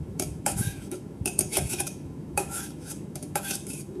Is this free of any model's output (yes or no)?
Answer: no